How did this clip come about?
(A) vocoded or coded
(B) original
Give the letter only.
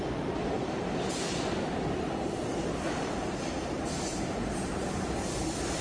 B